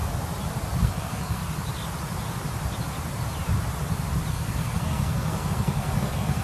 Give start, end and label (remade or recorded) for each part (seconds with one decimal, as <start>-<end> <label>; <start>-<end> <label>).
0.0-0.8 recorded; 0.8-1.4 remade; 1.4-4.3 recorded; 4.3-6.4 remade